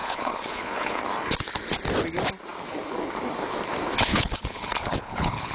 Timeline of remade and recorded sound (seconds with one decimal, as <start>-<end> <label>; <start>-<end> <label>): 0.0-1.0 remade; 1.0-4.1 recorded; 4.1-5.5 remade